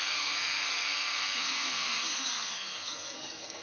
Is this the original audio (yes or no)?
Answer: no